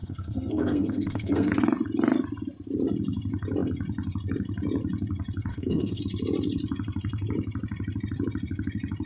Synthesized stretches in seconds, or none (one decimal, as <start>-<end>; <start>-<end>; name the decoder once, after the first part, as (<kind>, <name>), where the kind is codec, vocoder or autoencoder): 0.0-1.5 (codec, SNAC); 5.5-6.0